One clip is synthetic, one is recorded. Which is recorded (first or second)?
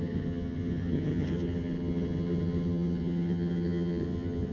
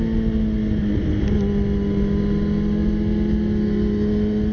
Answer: second